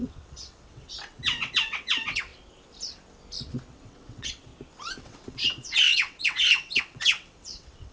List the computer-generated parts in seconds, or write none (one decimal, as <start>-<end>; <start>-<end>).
0.0-2.3; 3.7-4.5; 5.0-7.9